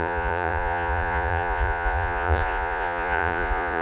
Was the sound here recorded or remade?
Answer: remade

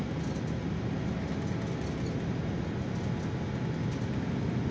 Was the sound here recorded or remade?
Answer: recorded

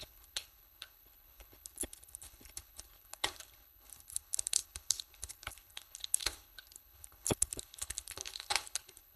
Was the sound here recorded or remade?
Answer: remade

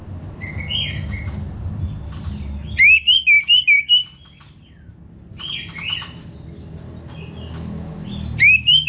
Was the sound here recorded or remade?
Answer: recorded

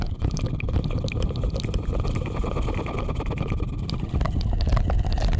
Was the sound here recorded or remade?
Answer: recorded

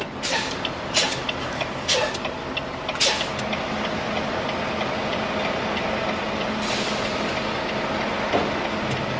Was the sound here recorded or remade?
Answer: recorded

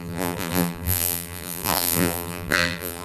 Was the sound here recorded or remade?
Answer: remade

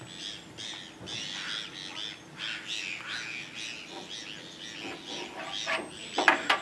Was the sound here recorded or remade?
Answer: recorded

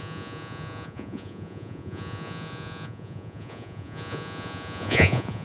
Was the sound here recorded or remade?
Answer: remade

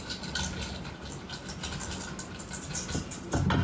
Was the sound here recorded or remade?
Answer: recorded